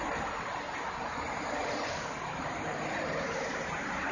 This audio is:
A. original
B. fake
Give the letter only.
A